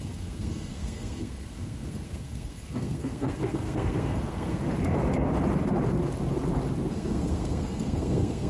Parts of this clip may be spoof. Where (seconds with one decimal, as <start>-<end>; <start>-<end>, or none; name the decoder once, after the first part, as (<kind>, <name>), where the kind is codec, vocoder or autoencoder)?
0.0-4.6 (codec, SNAC); 6.9-8.5